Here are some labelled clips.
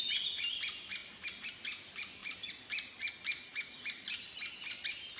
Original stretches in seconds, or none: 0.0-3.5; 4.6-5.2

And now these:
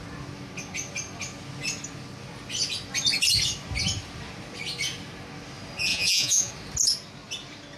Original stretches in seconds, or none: 0.0-5.9; 6.5-7.8